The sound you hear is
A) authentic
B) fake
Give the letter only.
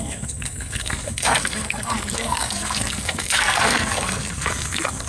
B